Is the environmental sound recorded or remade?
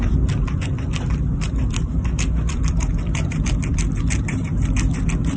remade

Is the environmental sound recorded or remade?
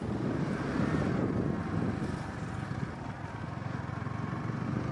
recorded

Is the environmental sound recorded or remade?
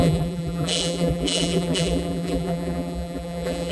remade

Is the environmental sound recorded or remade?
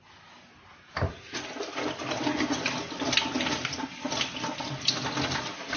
recorded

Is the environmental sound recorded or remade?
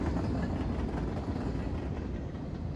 recorded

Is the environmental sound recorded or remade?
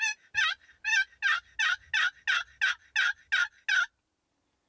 recorded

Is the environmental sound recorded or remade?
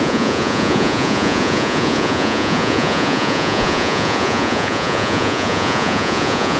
remade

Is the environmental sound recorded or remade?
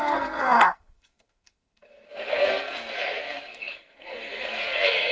remade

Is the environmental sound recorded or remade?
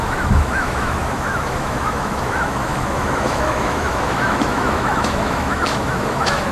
remade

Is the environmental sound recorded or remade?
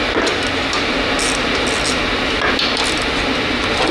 recorded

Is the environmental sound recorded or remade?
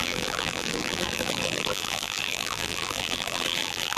remade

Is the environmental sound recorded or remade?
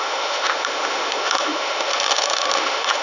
remade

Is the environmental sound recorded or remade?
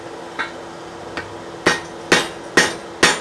recorded